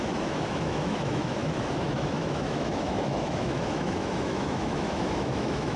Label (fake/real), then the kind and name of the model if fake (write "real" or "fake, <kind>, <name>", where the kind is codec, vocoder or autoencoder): fake, autoencoder, DAC-VAE